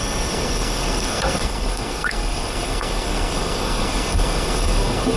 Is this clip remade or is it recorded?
remade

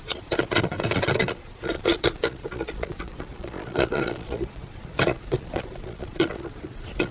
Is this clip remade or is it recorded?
remade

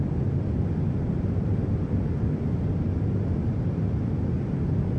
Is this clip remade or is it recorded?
recorded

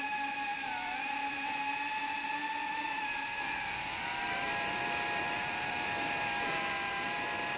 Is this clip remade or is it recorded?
remade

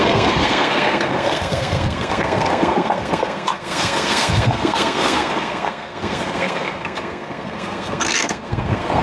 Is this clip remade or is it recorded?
remade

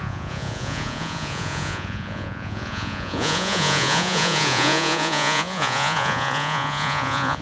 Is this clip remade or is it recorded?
remade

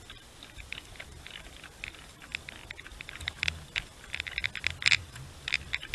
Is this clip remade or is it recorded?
recorded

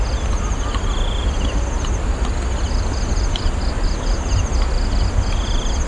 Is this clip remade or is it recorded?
recorded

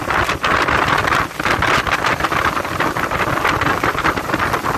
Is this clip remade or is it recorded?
recorded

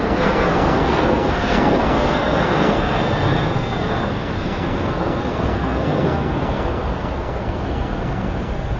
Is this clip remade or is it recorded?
remade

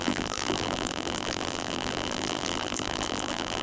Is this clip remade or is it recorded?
remade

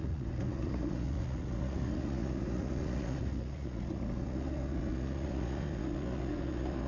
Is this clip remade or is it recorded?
remade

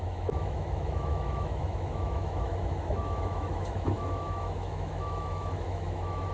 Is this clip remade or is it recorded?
remade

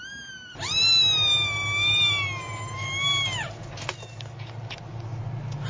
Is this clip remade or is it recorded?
recorded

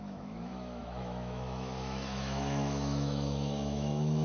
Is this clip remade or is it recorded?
remade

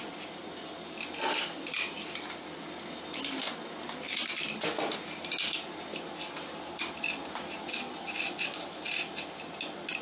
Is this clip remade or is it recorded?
recorded